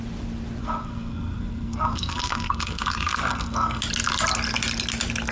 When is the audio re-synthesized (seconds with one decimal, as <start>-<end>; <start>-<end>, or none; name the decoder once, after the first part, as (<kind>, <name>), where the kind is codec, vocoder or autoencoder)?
0.6-3.8 (codec, SNAC)